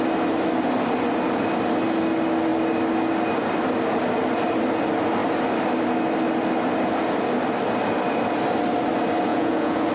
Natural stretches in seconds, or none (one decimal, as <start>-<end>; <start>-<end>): 0.0-9.3